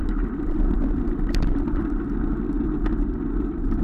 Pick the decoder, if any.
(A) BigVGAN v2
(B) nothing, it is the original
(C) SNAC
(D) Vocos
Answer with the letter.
A